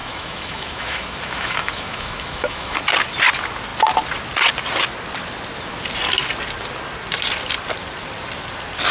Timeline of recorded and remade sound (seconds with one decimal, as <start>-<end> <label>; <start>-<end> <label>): 0.0-2.8 remade; 2.8-8.9 recorded